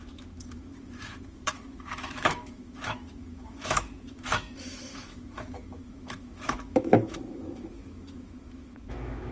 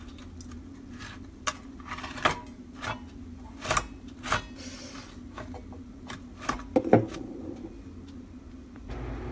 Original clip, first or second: second